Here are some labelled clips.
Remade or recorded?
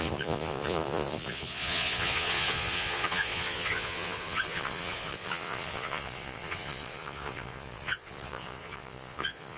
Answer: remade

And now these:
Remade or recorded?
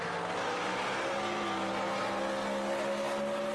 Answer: recorded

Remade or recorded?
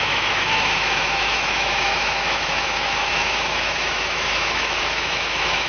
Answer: remade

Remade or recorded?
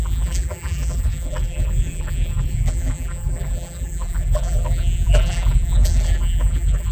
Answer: remade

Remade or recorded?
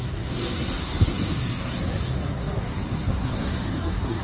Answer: remade